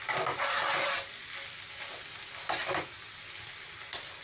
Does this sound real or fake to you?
real